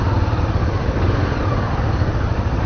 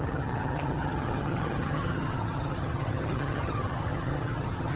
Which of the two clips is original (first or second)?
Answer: first